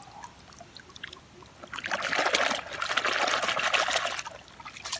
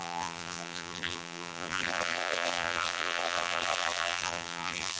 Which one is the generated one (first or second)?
second